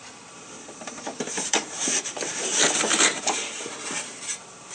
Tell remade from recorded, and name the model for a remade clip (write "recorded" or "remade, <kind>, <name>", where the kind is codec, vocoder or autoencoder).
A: remade, vocoder, BigVGAN v2